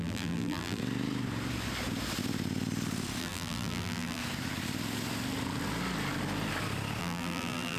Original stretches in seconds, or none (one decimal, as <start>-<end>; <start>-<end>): 0.8-3.2; 4.2-7.0